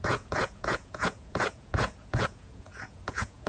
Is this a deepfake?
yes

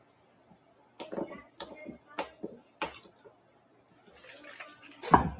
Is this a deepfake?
no